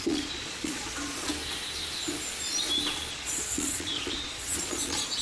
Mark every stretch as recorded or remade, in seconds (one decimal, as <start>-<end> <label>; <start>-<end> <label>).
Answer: 0.0-1.3 remade; 1.3-3.1 recorded; 3.1-5.2 remade